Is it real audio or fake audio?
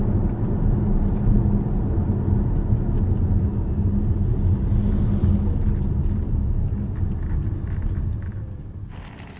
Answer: real